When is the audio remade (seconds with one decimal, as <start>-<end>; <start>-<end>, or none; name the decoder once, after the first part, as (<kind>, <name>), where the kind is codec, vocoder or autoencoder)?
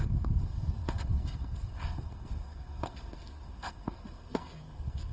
0.0-5.1 (codec, SNAC)